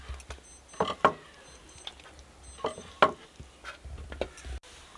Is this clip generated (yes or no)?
no